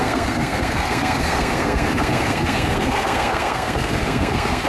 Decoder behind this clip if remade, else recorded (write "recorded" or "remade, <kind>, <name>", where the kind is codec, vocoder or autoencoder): remade, codec, SNAC